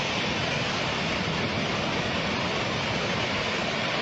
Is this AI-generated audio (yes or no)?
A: no